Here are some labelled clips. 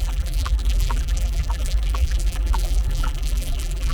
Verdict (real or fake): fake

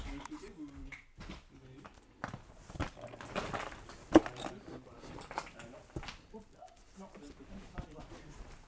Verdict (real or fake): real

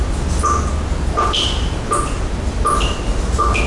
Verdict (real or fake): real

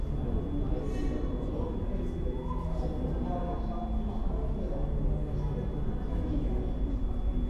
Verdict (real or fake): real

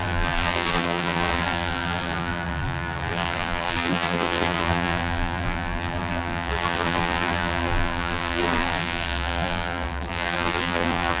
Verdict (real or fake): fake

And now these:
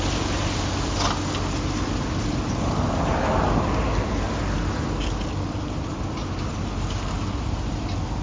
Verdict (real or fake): real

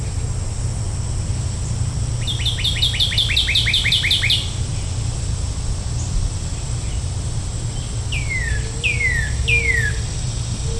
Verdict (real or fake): real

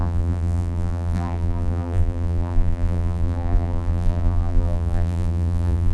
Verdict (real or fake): fake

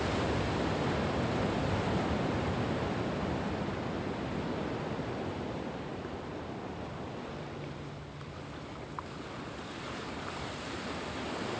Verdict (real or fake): real